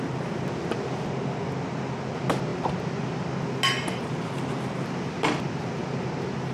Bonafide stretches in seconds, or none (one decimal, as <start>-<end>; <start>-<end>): 0.0-6.5